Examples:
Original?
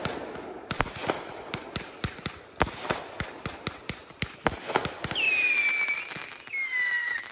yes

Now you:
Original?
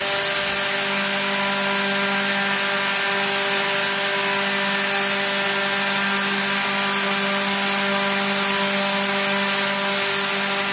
yes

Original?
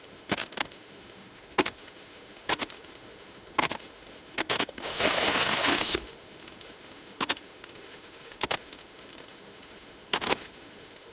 no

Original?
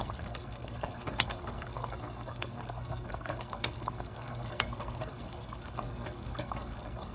no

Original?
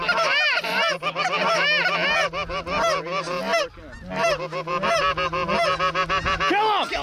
yes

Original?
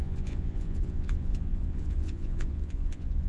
no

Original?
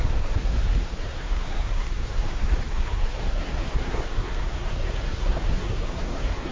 no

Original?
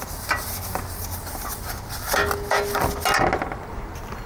yes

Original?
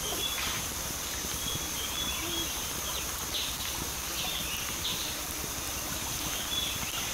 yes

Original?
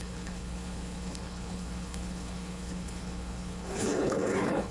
no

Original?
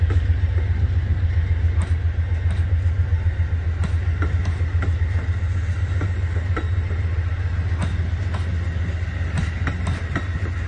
yes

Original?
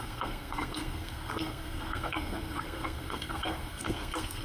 no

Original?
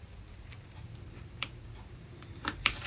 no